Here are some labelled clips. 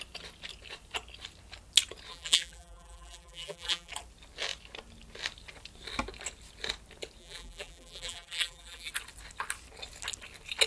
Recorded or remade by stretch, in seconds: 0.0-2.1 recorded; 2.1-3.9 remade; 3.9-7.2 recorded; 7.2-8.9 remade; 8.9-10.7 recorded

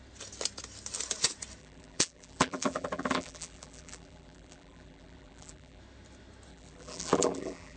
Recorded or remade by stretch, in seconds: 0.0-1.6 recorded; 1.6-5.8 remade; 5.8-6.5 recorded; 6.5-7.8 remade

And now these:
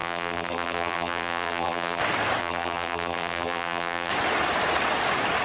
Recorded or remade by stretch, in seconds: 0.0-2.0 remade; 2.0-2.4 recorded; 2.4-4.1 remade; 4.1-5.4 recorded

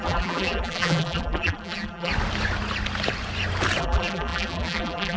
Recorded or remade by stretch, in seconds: 0.0-2.1 remade; 2.1-3.8 recorded; 3.8-5.2 remade

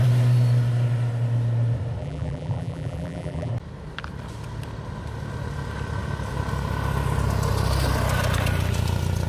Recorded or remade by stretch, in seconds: 0.0-2.0 recorded; 2.0-3.5 remade; 3.5-9.3 recorded

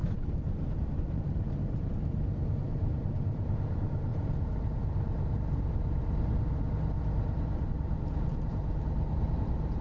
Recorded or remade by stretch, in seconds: 0.0-9.8 remade